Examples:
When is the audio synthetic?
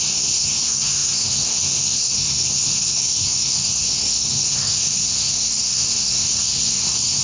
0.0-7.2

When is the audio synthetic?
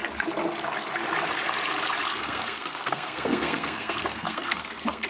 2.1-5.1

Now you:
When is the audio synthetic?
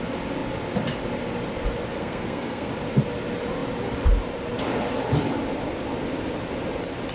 2.0-2.7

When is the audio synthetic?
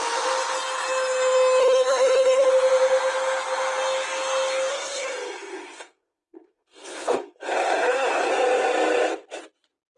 1.6-2.5; 4.7-8.3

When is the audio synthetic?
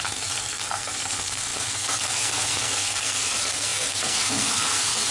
0.0-5.1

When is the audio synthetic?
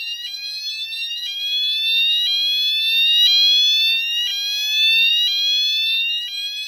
none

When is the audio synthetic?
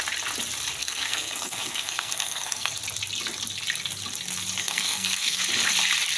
0.8-2.8; 4.6-5.4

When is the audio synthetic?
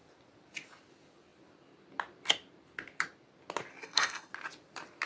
3.8-4.3